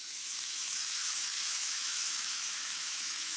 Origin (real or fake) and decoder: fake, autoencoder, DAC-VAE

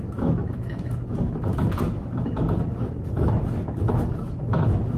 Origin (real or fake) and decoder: fake, autoencoder, DAC-VAE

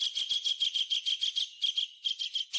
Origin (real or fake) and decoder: real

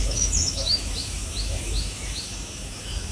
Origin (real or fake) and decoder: fake, autoencoder, DAC-VAE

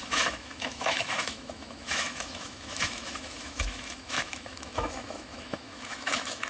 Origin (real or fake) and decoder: fake, autoencoder, DAC-VAE